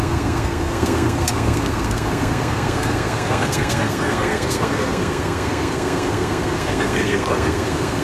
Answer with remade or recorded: remade